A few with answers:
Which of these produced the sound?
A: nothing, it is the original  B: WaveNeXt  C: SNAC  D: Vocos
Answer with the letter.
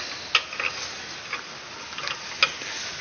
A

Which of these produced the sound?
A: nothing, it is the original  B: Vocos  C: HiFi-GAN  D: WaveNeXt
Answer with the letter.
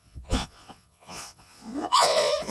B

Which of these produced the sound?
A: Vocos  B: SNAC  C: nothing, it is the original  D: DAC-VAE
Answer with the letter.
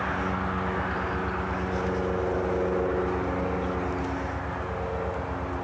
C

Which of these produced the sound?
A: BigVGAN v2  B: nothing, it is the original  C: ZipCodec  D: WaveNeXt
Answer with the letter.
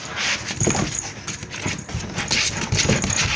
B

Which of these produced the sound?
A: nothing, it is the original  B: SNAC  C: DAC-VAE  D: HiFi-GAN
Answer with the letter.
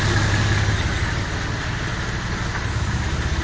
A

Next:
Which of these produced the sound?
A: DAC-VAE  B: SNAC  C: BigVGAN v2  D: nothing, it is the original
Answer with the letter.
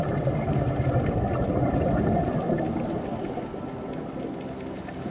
D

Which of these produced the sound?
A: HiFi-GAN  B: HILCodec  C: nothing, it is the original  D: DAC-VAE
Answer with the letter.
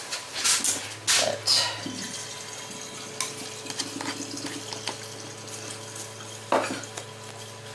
C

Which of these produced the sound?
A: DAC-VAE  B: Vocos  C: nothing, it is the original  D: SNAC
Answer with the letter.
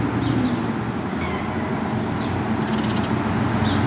C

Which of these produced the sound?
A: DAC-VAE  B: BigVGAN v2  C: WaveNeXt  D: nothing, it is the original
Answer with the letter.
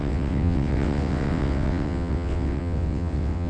C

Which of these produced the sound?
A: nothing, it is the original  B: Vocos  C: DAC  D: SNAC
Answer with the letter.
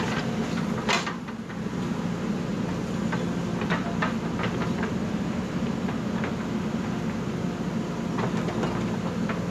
A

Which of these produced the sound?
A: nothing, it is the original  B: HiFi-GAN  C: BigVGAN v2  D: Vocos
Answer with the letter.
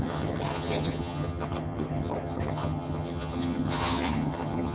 B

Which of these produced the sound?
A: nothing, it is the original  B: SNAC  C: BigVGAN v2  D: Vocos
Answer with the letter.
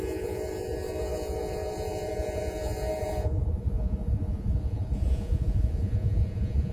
D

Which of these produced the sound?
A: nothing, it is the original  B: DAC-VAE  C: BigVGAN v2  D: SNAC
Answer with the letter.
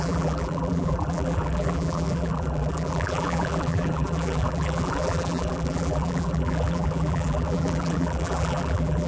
C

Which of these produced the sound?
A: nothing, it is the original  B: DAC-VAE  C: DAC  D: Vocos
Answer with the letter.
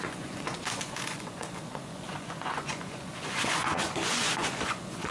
D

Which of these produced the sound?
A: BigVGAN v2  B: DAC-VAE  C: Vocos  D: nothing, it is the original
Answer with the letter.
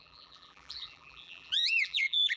A